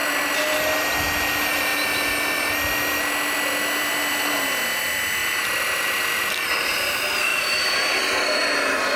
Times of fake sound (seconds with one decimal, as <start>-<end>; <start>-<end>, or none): 5.2-5.9